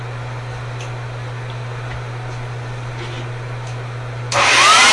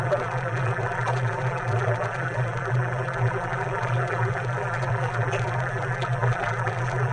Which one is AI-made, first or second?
second